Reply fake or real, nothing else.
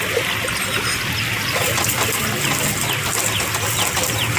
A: real